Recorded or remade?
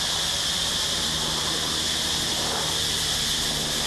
remade